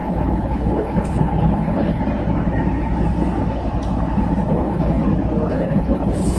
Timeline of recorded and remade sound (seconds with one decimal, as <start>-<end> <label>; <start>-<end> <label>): 0.0-2.0 remade; 2.0-4.5 recorded; 4.5-5.0 remade; 5.0-5.5 recorded; 5.5-6.4 remade